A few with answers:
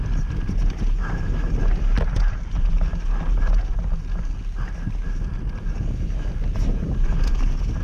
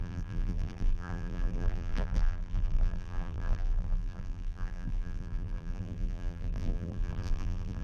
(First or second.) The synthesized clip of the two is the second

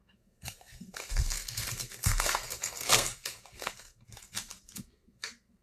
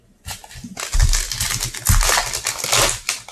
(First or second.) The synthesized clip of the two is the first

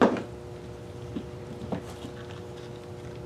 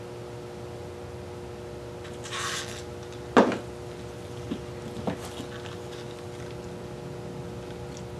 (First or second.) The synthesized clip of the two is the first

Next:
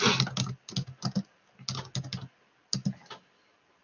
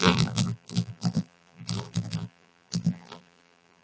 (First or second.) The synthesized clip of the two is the second